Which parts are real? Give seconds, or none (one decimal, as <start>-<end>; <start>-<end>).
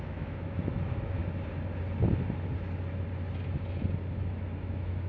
1.2-4.3